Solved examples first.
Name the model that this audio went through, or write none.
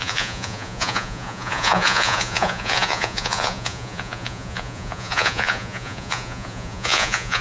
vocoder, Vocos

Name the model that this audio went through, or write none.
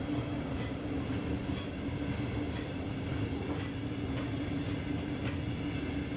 none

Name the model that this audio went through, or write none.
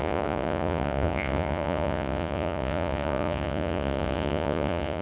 vocoder, Vocos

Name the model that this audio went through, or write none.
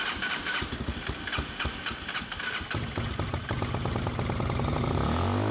none